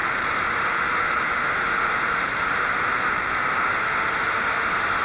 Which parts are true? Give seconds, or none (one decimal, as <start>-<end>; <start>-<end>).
3.0-5.0